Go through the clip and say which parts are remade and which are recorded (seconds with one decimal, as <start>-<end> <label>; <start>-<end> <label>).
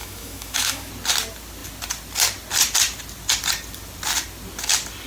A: 0.0-0.9 remade; 0.9-5.1 recorded